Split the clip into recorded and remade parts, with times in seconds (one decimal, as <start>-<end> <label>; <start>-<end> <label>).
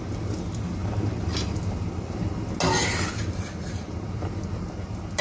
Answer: 0.0-5.2 recorded